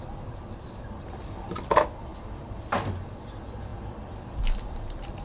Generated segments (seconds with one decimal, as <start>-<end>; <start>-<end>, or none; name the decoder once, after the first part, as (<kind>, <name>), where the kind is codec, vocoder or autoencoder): 0.0-2.1 (vocoder, BigVGAN v2); 3.2-5.2